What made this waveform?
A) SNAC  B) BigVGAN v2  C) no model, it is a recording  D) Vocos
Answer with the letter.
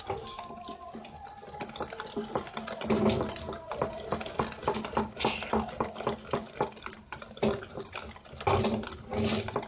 C